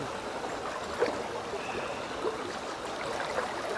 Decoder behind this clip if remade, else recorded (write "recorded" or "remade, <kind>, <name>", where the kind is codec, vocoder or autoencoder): recorded